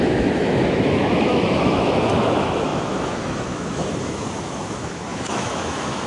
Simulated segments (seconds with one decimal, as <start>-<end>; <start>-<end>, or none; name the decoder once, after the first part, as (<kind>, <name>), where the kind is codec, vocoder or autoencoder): 0.0-6.1 (autoencoder, DAC-VAE)